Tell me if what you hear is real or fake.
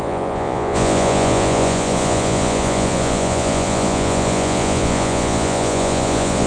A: fake